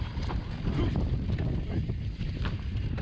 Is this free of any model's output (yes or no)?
no